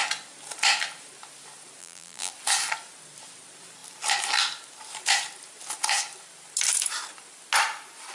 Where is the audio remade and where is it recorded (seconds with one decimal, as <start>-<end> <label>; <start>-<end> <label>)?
0.0-1.8 recorded; 1.8-2.3 remade; 2.3-8.1 recorded